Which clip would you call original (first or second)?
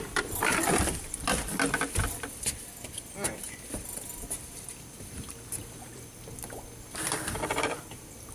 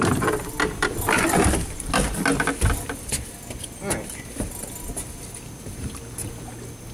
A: second